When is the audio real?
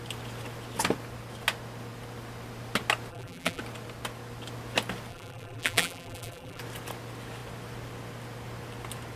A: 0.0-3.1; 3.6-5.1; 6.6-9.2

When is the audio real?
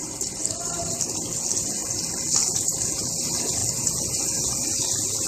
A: 0.0-5.3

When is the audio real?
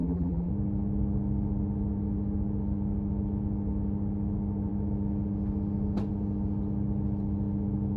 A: 0.5-8.0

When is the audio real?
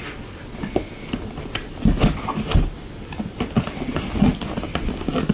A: 0.0-5.3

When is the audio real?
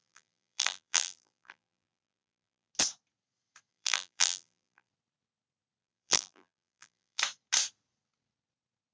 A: 2.7-3.7; 4.9-5.8; 7.2-8.9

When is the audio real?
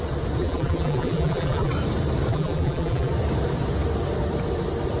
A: 0.0-0.4; 1.7-2.3; 3.1-5.0